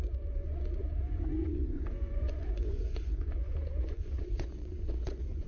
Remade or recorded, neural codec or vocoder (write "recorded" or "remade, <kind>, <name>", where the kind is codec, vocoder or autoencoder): remade, vocoder, Vocos